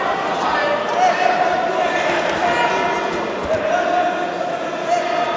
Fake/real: real